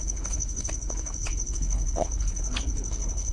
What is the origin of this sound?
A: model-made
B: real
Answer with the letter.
A